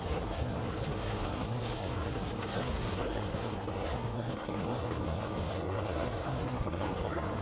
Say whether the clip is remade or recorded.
remade